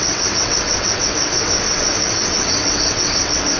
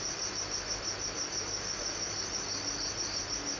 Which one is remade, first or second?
first